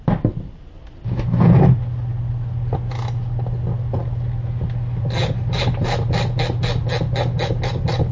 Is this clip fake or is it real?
real